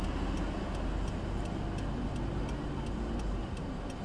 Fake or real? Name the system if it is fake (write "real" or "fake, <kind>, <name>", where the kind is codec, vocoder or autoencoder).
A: real